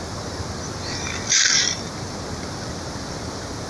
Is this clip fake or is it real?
real